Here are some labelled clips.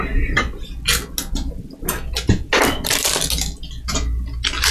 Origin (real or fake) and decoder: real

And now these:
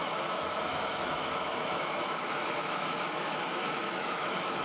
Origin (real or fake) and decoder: fake, autoencoder, DAC-VAE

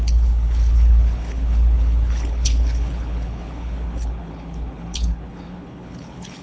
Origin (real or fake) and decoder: fake, codec, HILCodec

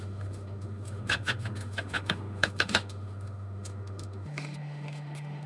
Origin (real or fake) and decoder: fake, autoencoder, DAC-VAE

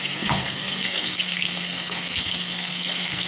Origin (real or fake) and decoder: fake, codec, SNAC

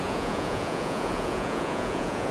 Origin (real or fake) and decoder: fake, vocoder, Vocos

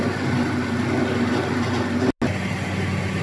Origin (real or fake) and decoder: real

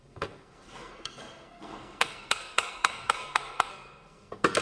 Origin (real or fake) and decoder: fake, codec, SNAC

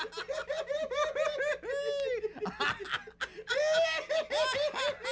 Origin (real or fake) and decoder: real